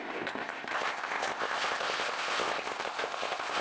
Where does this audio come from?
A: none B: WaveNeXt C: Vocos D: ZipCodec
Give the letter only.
D